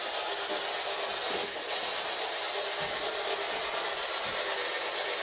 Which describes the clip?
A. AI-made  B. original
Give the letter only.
B